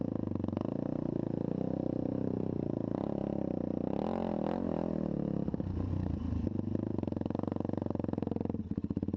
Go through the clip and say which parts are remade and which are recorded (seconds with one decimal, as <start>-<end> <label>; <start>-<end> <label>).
0.0-9.2 recorded